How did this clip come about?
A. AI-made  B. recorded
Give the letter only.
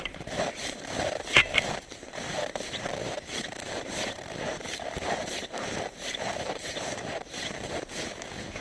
A